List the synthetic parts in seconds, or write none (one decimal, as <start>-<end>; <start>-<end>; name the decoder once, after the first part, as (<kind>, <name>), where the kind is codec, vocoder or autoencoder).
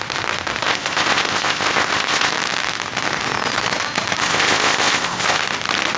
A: 0.6-2.3 (codec, ZipCodec); 4.2-5.4